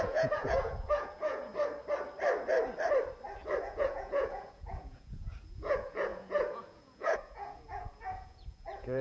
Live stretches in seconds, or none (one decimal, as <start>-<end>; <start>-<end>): 1.5-3.6